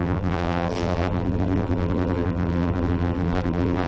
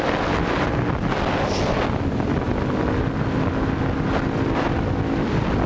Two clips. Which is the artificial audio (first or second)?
first